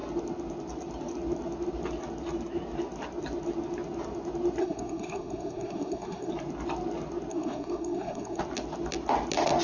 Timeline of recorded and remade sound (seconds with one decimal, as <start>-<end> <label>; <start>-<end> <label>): 0.0-4.6 recorded; 4.6-6.3 remade; 6.3-7.3 recorded; 7.3-8.4 remade; 8.4-9.6 recorded